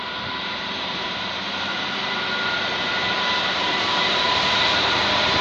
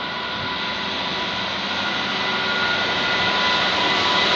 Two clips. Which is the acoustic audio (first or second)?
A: second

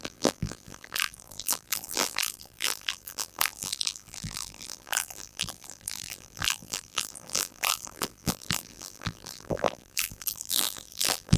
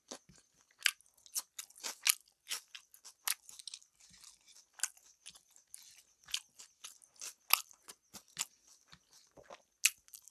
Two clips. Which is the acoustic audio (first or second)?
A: second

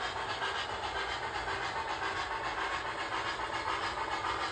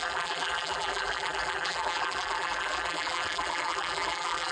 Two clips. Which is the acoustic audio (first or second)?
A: first